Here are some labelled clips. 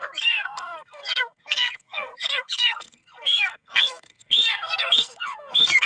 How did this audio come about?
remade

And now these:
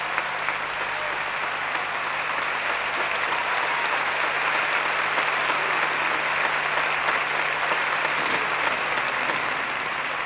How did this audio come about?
recorded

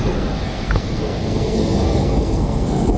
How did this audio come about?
remade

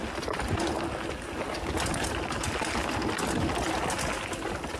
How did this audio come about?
recorded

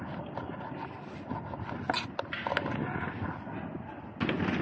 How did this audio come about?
recorded